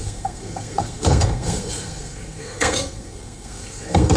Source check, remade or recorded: remade